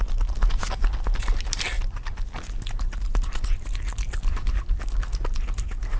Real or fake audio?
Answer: real